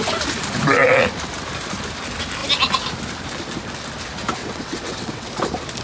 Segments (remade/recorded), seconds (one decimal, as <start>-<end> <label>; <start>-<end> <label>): 0.0-4.4 recorded; 4.4-5.3 remade; 5.3-5.8 recorded